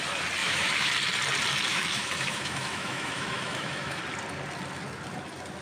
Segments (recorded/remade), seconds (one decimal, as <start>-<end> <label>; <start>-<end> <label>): 0.0-0.4 recorded; 0.4-0.9 remade; 0.9-1.7 recorded; 1.7-4.0 remade; 4.0-5.6 recorded